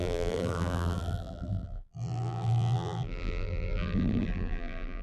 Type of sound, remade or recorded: remade